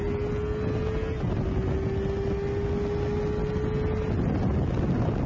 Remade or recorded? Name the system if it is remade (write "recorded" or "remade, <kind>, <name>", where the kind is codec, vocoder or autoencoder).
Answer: recorded